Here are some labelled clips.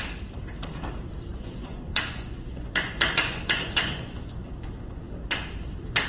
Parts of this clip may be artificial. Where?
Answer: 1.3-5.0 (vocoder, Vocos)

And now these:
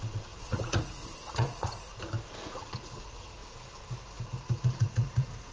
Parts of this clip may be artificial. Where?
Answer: 0.0-1.9 (vocoder, Vocos); 2.4-3.4; 4.2-5.5

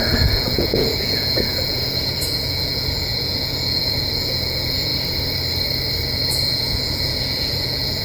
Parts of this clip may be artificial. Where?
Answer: 0.0-4.9 (vocoder, Vocos); 6.3-8.0

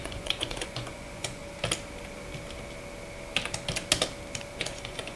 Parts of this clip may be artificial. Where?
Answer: 0.0-1.4 (vocoder, Vocos); 4.5-5.2

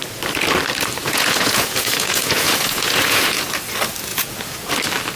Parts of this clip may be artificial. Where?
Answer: 1.0-3.5 (vocoder, Vocos); 4.1-4.7